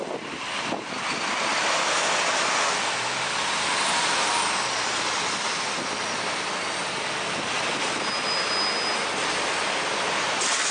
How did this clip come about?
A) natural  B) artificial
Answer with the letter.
A